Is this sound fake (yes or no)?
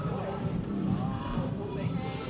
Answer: yes